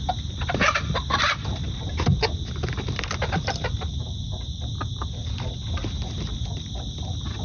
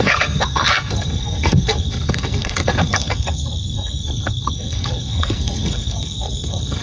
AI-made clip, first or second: second